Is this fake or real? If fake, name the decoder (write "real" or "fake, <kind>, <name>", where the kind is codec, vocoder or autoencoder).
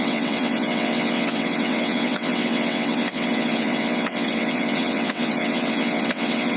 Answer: fake, vocoder, WaveNeXt